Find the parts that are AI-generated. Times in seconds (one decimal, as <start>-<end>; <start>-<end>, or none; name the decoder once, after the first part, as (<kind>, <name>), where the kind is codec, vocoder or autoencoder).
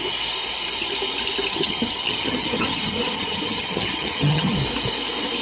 1.5-4.5 (vocoder, HiFi-GAN)